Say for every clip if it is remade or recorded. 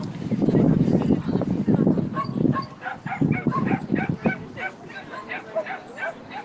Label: recorded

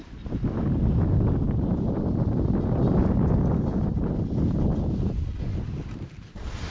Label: recorded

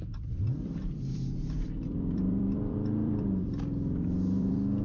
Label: remade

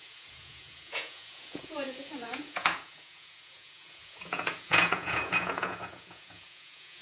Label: remade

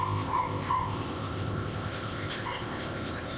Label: remade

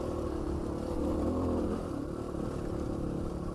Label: remade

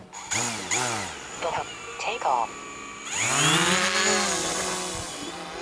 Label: recorded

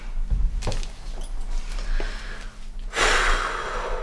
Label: recorded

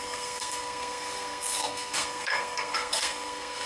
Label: remade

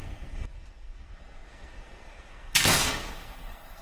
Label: remade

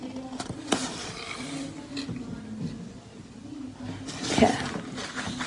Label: recorded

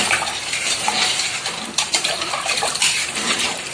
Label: remade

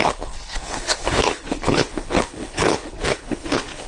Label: remade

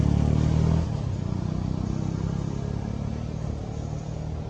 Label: recorded